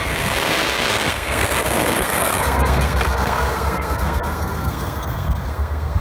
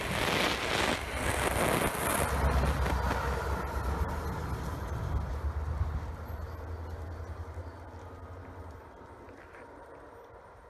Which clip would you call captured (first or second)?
second